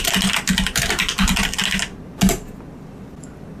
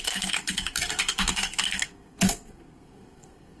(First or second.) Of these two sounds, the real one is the first